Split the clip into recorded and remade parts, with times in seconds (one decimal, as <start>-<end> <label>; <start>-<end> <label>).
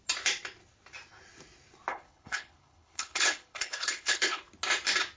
0.0-1.9 recorded; 1.9-4.4 remade; 4.4-5.2 recorded